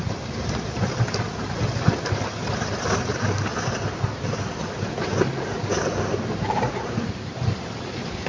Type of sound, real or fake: real